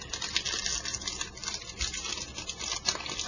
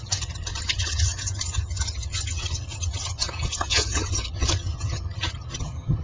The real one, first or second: first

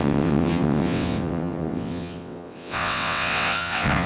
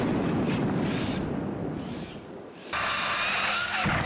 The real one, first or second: second